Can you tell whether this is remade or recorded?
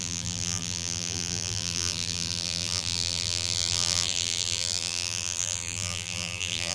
remade